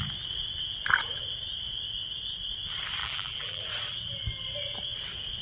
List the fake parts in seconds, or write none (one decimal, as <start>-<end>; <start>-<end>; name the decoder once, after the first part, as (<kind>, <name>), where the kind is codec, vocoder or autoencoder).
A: 3.0-3.6 (vocoder, BigVGAN v2)